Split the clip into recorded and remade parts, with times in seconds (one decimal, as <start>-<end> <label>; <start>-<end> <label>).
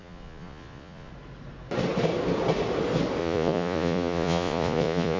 0.0-1.1 remade; 1.1-3.2 recorded; 3.2-5.2 remade